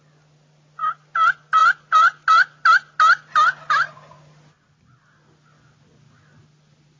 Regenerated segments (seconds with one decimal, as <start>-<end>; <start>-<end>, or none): none